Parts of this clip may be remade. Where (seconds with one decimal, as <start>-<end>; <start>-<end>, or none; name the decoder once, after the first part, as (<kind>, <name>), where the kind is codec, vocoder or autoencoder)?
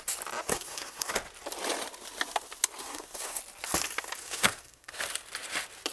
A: 0.5-1.1 (codec, SNAC); 2.8-3.4; 4.2-5.0